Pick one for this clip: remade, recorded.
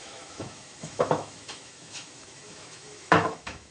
remade